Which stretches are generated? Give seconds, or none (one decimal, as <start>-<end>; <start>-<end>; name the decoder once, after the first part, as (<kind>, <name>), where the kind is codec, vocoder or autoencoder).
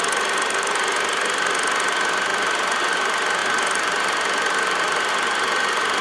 none